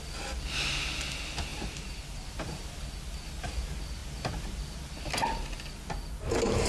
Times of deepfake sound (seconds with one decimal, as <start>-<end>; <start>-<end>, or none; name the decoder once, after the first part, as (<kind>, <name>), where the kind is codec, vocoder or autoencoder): 1.5-2.4 (vocoder, BigVGAN v2)